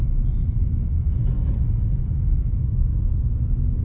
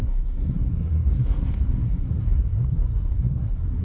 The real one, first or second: first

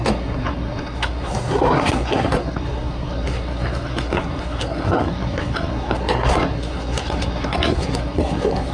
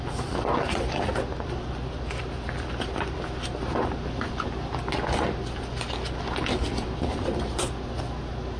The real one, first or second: second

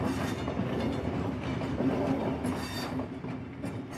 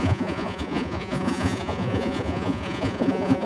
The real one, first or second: first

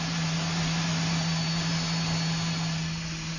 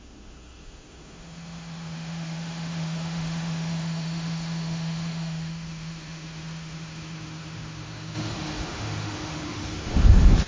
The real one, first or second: first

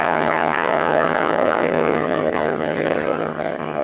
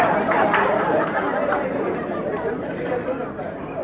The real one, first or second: second